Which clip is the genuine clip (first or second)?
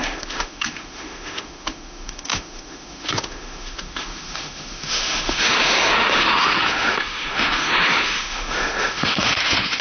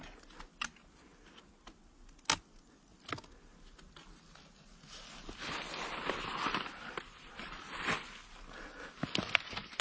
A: second